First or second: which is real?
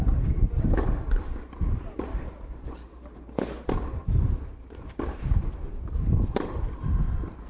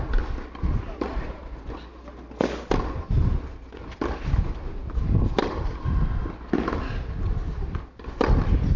second